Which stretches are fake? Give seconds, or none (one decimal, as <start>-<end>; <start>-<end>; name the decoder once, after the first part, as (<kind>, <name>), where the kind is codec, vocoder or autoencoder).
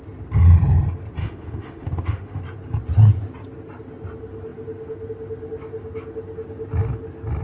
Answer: 1.2-2.4 (autoencoder, DAC-VAE)